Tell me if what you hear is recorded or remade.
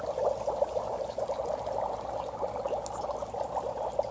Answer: recorded